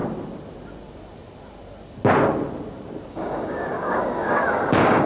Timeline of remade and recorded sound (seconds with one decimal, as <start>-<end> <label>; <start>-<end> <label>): 0.0-3.1 recorded; 3.1-5.1 remade